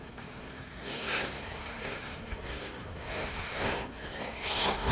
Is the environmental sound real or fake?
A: fake